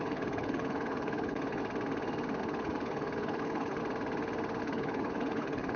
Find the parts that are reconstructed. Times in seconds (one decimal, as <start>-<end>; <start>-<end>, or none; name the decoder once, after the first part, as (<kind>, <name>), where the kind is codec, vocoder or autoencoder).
0.0-1.6 (codec, HILCodec); 2.4-3.8; 4.6-5.8